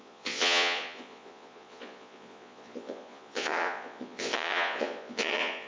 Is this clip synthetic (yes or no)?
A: yes